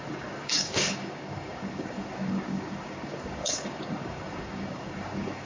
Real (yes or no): no